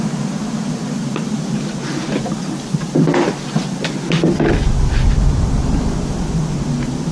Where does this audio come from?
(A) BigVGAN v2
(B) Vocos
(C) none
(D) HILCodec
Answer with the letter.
C